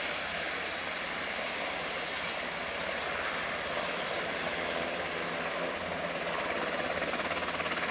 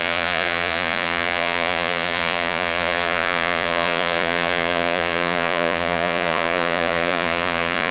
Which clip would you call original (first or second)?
first